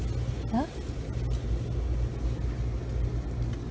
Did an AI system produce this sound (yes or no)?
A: no